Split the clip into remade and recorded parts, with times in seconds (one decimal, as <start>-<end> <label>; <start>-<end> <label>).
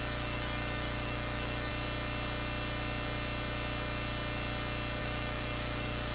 0.0-1.7 remade; 1.7-5.0 recorded; 5.0-6.1 remade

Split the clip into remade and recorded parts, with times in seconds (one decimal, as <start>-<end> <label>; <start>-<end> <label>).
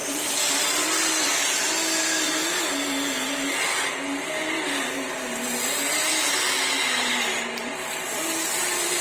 0.0-6.1 recorded; 6.1-7.1 remade; 7.1-9.0 recorded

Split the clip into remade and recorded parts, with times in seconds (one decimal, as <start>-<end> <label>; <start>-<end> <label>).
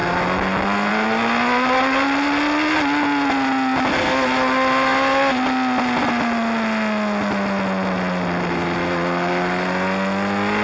0.0-10.6 recorded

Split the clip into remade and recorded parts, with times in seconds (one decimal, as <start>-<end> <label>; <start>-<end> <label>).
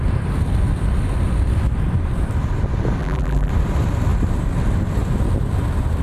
0.0-3.0 recorded; 3.0-3.5 remade; 3.5-6.0 recorded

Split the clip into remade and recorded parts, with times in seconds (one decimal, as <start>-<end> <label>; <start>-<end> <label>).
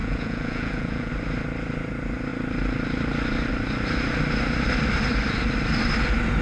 0.0-1.1 remade; 1.1-6.4 recorded